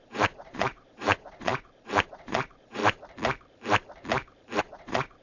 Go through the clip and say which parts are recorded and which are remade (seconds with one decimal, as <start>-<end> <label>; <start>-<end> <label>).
0.0-2.8 remade; 2.8-4.6 recorded; 4.6-5.2 remade